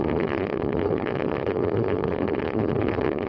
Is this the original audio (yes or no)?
no